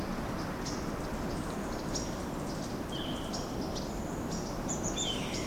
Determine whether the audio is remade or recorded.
recorded